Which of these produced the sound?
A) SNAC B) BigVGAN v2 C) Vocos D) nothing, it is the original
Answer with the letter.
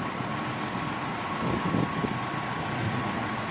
D